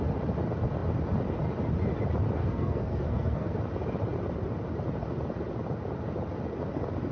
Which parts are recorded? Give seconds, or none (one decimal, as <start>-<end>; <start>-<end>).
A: 0.0-2.4; 3.6-7.1